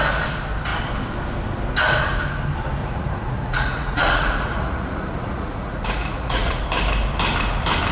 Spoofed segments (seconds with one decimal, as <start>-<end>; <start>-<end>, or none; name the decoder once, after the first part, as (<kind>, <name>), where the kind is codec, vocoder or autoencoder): 2.8-6.6 (vocoder, Vocos)